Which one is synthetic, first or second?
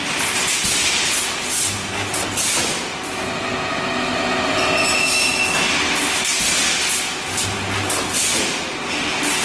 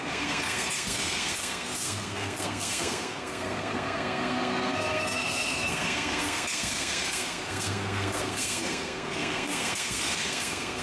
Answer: second